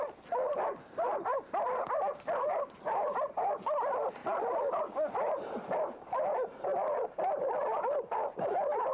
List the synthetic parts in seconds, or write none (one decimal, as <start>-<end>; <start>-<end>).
0.0-4.2; 5.3-6.7; 7.8-8.9